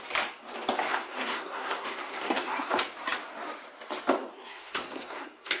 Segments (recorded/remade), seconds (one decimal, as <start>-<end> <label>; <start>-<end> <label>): 0.0-0.9 recorded; 0.9-2.7 remade; 2.7-4.3 recorded; 4.3-5.6 remade